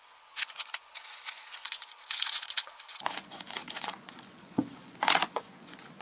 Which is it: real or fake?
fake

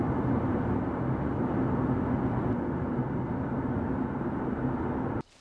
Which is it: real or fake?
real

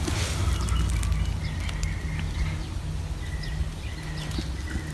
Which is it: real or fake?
real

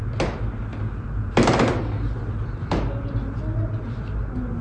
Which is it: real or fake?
real